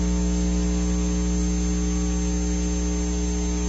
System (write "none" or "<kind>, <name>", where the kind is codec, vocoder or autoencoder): none